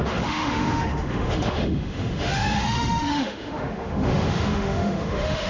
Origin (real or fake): fake